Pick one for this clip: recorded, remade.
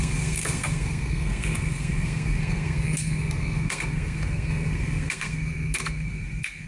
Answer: remade